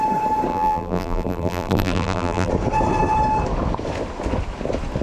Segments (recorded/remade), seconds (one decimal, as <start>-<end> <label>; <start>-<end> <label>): 0.0-0.5 recorded; 0.5-2.5 remade; 2.5-5.0 recorded